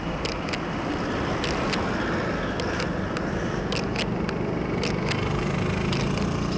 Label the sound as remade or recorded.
recorded